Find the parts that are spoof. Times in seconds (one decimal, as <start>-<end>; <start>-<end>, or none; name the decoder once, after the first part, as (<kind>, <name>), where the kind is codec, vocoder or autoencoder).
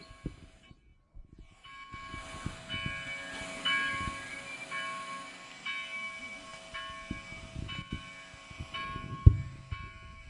none